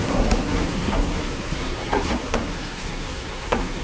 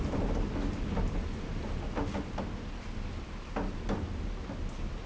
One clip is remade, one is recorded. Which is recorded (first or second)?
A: second